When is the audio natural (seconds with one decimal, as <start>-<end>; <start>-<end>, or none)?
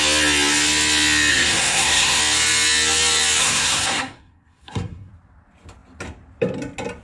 0.0-1.3; 2.2-3.4; 5.1-7.0